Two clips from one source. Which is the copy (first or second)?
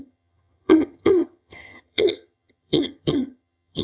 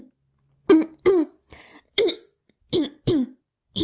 first